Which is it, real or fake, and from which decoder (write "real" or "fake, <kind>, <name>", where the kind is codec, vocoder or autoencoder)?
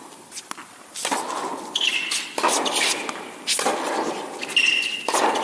real